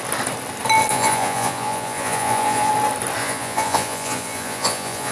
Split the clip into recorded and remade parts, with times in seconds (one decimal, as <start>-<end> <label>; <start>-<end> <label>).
0.0-0.9 recorded; 0.9-2.7 remade; 2.7-3.2 recorded; 3.2-5.1 remade